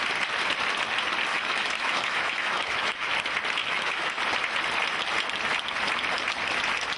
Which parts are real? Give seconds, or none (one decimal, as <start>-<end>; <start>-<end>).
0.0-1.3; 3.1-3.6; 4.2-7.0